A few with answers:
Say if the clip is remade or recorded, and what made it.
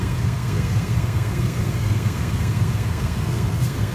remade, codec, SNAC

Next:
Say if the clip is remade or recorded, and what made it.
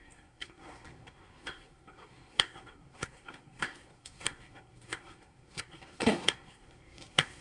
remade, codec, SNAC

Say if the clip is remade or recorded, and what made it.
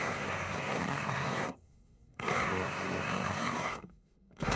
remade, codec, SNAC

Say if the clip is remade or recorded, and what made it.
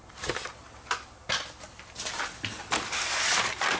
recorded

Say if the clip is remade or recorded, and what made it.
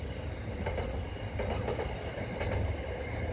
recorded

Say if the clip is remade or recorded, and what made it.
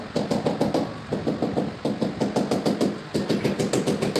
recorded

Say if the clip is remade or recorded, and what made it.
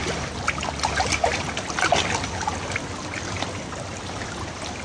recorded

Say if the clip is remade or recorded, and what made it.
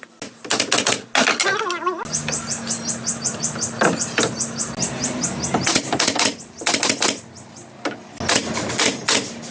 recorded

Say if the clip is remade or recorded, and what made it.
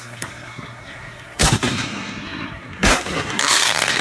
remade, codec, SNAC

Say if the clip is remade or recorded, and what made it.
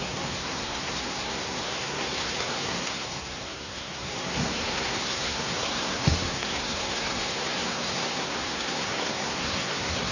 remade, codec, SNAC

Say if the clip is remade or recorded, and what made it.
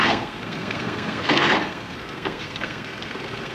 remade, codec, SNAC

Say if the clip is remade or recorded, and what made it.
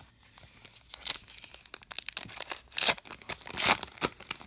recorded